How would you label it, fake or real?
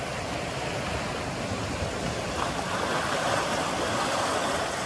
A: real